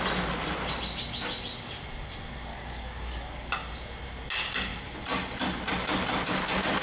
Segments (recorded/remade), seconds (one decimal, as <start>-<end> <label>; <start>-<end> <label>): 0.0-2.5 recorded; 2.5-3.5 remade; 3.5-6.8 recorded